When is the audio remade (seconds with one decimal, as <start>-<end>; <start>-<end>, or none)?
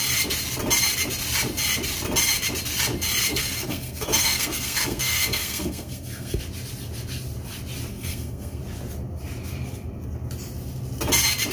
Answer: 3.3-6.4; 7.9-8.6